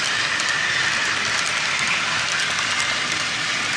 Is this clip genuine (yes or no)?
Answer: yes